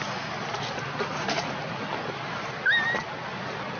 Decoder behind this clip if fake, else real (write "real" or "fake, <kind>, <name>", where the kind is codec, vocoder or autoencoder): real